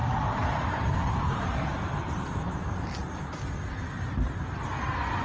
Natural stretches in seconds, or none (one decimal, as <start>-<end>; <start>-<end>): 0.5-3.0; 4.8-5.2